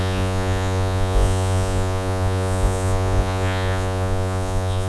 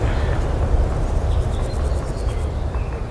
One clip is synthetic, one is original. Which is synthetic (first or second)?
first